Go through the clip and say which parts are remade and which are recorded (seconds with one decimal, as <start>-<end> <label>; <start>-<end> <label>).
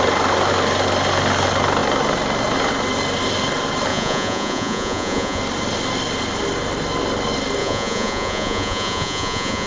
0.0-3.9 recorded; 3.9-5.4 remade; 5.4-7.6 recorded; 7.6-9.7 remade